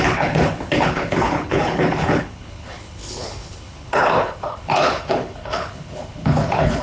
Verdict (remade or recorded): remade